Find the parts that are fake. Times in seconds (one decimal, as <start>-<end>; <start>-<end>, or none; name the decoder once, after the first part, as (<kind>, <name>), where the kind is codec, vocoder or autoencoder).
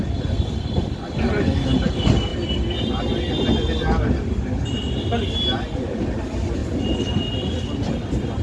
none